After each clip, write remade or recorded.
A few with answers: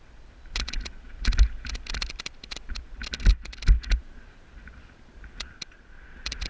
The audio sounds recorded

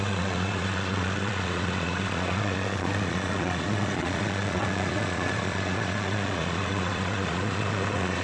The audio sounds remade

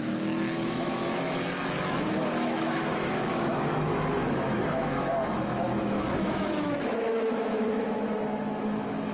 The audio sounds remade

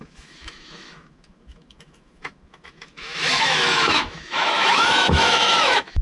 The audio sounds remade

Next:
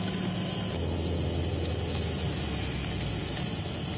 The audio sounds recorded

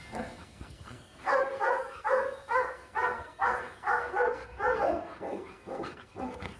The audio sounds remade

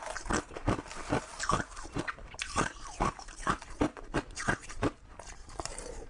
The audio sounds remade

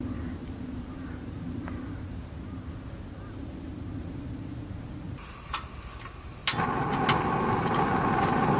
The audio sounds recorded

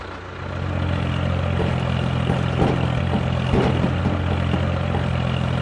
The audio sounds recorded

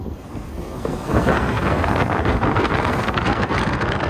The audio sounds remade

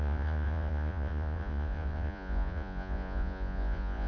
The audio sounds remade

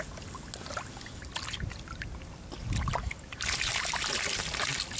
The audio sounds recorded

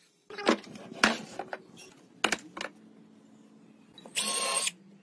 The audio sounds recorded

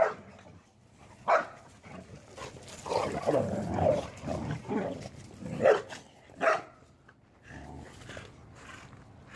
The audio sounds recorded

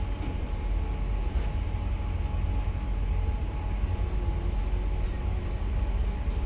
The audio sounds recorded